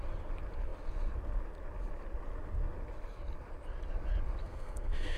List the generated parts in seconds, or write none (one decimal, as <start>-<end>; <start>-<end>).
4.4-5.2